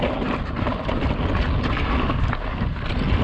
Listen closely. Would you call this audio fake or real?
real